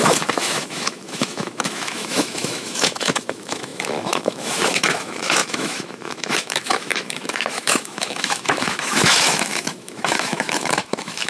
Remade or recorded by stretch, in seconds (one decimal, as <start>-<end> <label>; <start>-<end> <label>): 0.0-11.3 remade